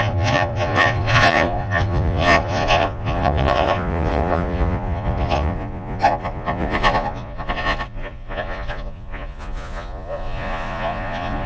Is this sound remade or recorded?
remade